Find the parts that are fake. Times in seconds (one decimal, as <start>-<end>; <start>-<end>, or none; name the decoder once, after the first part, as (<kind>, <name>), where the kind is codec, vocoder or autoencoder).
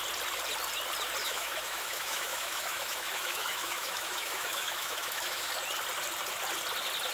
1.2-5.5 (autoencoder, DAC-VAE)